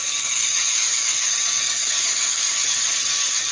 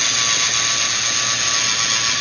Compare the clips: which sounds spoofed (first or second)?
first